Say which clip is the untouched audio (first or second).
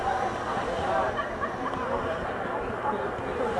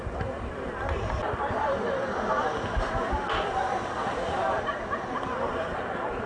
first